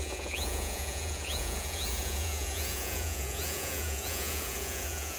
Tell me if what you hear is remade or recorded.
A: remade